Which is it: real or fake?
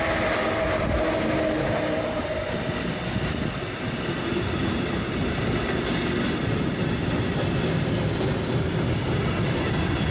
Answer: real